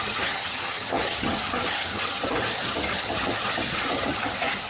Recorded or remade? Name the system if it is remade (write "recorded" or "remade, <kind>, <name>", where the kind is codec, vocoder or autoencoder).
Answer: remade, vocoder, HiFi-GAN